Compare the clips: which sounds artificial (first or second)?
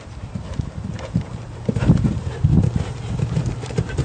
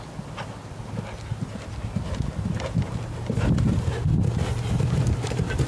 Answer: first